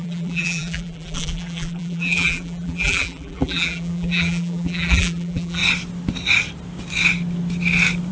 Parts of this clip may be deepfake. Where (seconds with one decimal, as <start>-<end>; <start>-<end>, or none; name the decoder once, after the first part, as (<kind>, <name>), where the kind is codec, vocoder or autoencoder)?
0.0-5.6 (vocoder, BigVGAN v2)

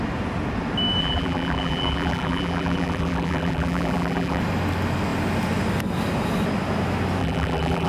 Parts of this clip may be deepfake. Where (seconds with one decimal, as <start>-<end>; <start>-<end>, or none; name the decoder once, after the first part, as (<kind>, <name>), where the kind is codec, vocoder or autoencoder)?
1.0-4.4 (vocoder, BigVGAN v2); 7.2-7.9

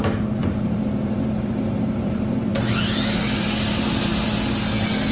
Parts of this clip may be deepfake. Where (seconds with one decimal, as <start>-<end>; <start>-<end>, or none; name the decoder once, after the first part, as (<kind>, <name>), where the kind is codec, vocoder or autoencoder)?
0.4-2.5 (vocoder, BigVGAN v2)

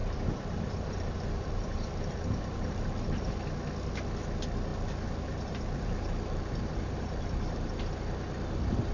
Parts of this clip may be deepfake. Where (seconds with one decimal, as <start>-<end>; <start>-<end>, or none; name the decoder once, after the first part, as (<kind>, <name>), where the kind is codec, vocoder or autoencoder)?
0.0-3.3 (vocoder, BigVGAN v2); 4.7-7.8